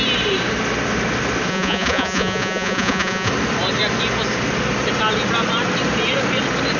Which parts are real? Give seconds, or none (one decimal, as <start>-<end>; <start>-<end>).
0.0-1.5; 3.3-6.8